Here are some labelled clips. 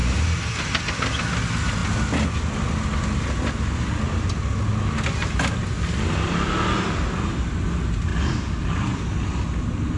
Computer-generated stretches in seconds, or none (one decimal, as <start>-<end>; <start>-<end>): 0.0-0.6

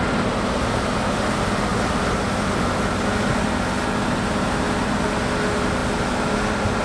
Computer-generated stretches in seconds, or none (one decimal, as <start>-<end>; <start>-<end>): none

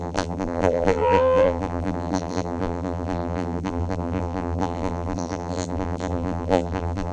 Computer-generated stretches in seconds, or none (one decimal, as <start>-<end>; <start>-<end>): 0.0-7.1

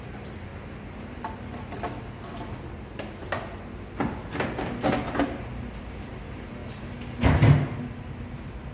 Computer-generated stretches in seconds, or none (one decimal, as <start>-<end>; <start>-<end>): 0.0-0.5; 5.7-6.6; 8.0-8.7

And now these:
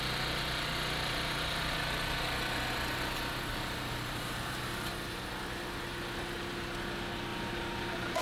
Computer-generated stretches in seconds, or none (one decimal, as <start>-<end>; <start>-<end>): 3.5-5.3; 7.3-8.2

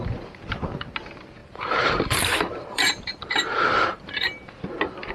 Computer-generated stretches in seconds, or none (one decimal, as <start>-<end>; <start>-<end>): 1.4-4.5